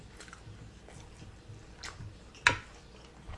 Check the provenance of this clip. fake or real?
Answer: real